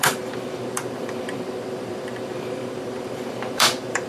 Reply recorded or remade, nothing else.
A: remade